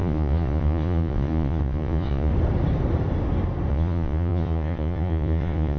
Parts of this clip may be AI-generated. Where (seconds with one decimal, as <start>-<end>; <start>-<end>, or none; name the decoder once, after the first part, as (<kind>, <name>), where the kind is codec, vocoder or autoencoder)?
0.0-2.3 (vocoder, Vocos); 3.7-5.8